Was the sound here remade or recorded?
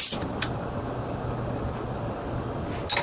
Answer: recorded